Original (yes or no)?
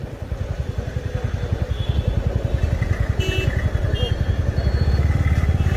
yes